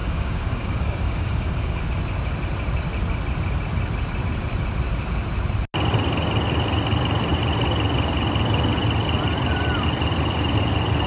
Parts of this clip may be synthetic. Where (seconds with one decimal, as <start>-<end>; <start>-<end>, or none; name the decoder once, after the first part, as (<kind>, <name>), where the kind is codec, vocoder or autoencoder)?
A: 0.0-1.8 (codec, DAC)